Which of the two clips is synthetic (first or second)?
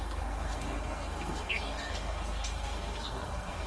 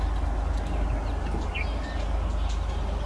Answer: first